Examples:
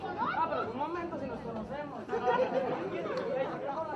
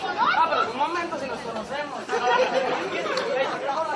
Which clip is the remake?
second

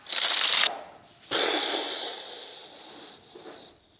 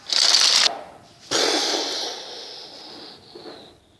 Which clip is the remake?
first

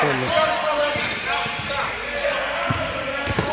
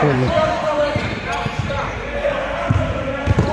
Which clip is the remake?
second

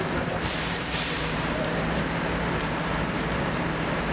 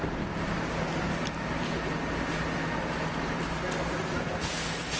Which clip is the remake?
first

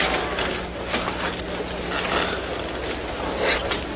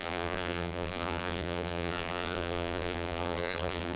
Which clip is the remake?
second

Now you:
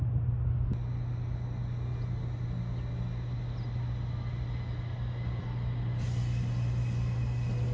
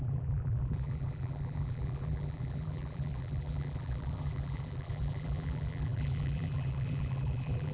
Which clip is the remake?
second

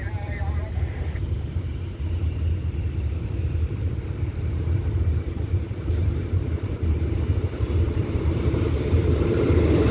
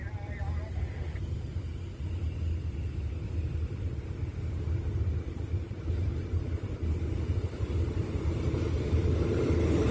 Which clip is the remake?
first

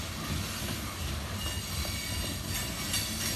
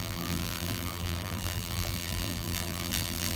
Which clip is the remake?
second